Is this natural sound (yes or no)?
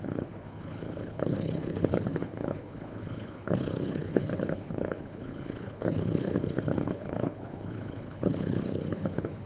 no